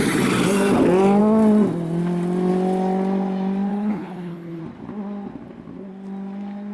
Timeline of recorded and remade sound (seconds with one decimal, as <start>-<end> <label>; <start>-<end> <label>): 0.0-3.7 recorded; 3.7-4.6 remade; 4.6-6.7 recorded